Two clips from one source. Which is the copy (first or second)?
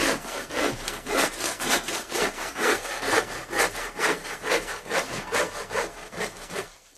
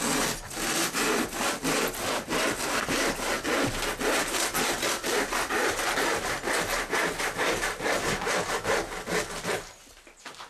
first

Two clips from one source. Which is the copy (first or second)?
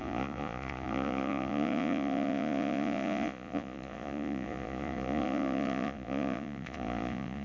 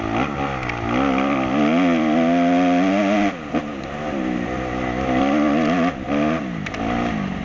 first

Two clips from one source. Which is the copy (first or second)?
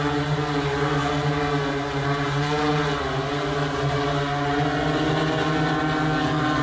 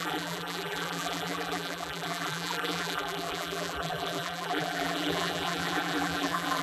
second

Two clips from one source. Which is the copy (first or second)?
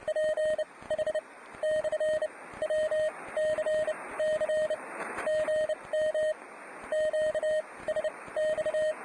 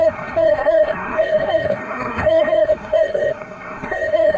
second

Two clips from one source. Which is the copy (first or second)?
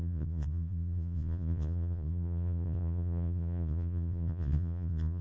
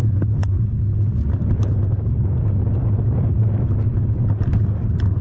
first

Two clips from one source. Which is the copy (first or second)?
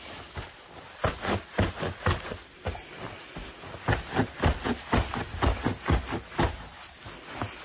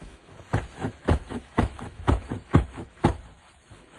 second